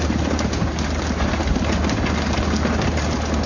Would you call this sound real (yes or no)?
yes